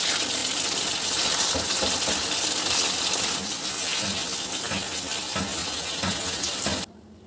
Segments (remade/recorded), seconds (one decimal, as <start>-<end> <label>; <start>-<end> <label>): 0.0-5.6 recorded; 5.6-6.5 remade; 6.5-7.3 recorded

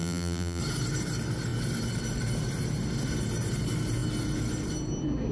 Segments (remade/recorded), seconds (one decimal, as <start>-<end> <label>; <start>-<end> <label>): 0.0-0.6 remade; 0.6-5.3 recorded